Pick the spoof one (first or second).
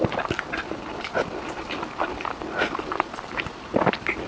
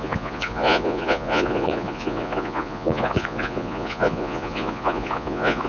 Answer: second